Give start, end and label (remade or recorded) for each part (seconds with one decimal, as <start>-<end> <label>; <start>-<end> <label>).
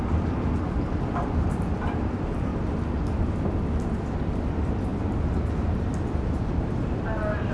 0.0-2.5 remade; 2.5-3.6 recorded; 3.6-4.9 remade; 4.9-5.7 recorded; 5.7-7.5 remade